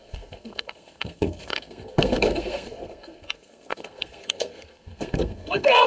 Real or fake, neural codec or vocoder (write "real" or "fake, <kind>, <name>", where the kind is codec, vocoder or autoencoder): fake, codec, SNAC